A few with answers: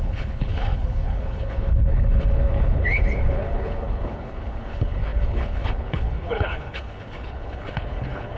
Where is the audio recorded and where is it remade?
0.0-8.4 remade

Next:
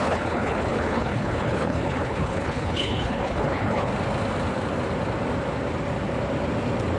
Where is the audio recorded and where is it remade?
0.0-3.9 remade; 3.9-7.0 recorded

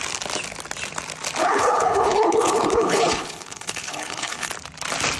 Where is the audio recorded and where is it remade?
0.0-1.4 recorded; 1.4-4.5 remade; 4.5-5.2 recorded

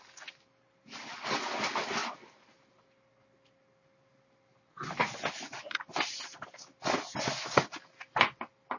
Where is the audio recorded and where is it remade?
0.0-8.8 recorded

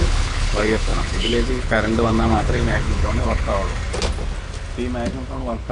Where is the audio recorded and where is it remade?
0.0-3.5 remade; 3.5-5.3 recorded; 5.3-5.7 remade

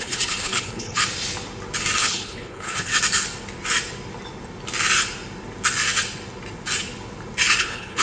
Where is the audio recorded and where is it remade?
0.0-1.0 remade; 1.0-2.0 recorded; 2.0-2.9 remade; 2.9-7.6 recorded; 7.6-8.0 remade